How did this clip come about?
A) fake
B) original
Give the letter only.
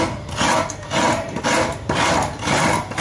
B